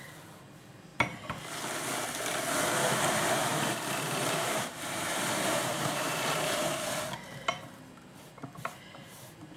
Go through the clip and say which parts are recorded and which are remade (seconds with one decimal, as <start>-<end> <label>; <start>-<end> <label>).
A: 0.0-3.5 recorded; 3.5-7.0 remade; 7.0-9.6 recorded

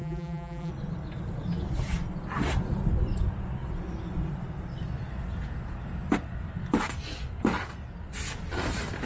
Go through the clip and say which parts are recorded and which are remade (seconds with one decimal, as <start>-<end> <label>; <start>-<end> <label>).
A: 0.0-0.7 remade; 0.7-9.1 recorded

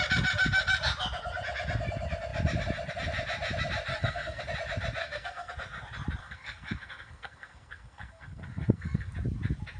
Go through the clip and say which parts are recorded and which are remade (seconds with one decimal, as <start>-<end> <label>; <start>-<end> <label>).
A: 0.0-3.9 recorded; 3.9-4.4 remade; 4.4-5.0 recorded; 5.0-5.5 remade; 5.5-6.2 recorded; 6.2-9.1 remade; 9.1-9.8 recorded

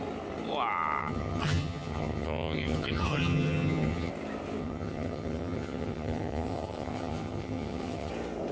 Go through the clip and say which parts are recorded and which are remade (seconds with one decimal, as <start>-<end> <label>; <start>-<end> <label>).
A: 0.0-1.0 recorded; 1.0-4.1 remade; 4.1-4.6 recorded; 4.6-8.1 remade; 8.1-8.5 recorded

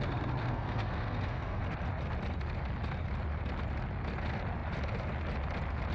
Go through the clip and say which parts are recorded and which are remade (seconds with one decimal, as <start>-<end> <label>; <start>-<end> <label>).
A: 0.0-0.4 recorded; 0.4-1.6 remade; 1.6-5.9 recorded

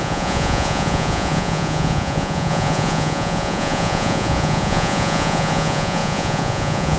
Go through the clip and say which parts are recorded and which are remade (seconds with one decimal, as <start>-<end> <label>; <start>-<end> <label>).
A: 0.0-7.0 remade

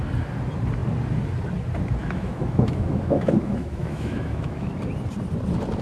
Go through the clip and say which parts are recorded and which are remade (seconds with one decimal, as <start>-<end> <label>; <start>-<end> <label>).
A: 0.0-2.0 recorded; 2.0-4.7 remade; 4.7-5.8 recorded

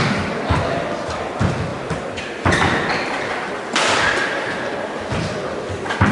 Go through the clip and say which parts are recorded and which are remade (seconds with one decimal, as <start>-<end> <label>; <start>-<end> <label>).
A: 0.0-6.1 recorded